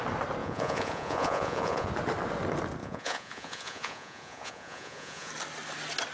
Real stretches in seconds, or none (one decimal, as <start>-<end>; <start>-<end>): 0.0-0.4; 1.9-2.8; 5.3-6.1